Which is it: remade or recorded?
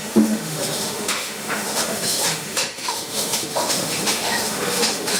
remade